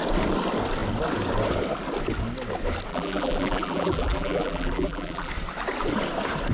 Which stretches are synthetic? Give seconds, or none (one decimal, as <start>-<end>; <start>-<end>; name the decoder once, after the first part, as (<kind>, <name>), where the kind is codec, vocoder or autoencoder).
2.9-5.3 (vocoder, BigVGAN v2)